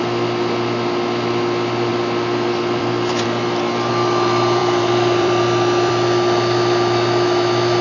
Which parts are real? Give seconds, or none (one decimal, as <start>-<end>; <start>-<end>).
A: 0.0-1.9; 3.9-4.6; 5.9-7.8